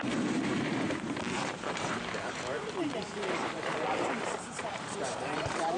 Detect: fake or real fake